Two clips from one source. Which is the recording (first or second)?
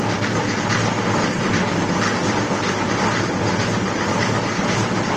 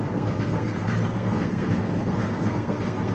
first